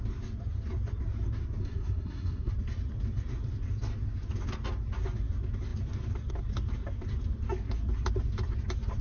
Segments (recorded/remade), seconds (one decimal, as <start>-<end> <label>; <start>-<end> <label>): 0.0-1.6 recorded; 1.6-2.5 remade; 2.5-9.0 recorded